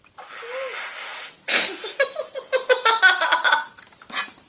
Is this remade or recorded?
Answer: recorded